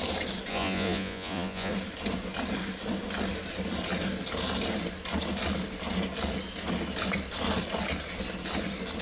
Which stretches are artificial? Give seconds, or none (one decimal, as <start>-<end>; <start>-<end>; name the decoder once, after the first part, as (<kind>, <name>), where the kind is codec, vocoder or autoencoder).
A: 0.5-1.7 (vocoder, Vocos)